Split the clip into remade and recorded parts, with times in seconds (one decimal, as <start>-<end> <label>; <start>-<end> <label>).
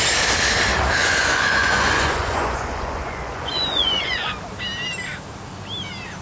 0.0-1.0 recorded; 1.0-4.4 remade; 4.4-6.2 recorded